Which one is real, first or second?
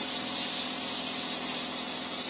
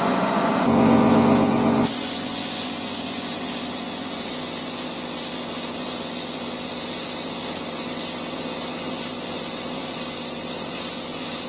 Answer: first